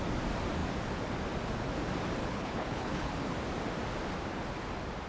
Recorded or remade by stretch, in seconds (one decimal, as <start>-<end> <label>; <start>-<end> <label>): 0.0-2.2 recorded; 2.2-3.1 remade; 3.1-5.1 recorded

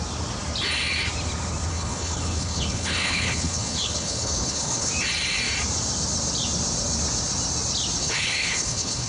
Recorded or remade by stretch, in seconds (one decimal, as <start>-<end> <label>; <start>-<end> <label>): 0.0-1.7 recorded; 1.7-4.9 remade; 4.9-8.0 recorded; 8.0-9.1 remade